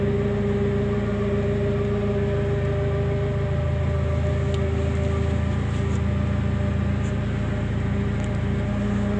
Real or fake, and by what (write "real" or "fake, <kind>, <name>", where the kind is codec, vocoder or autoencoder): real